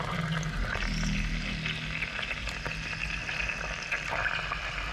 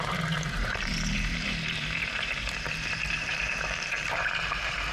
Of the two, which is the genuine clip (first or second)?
first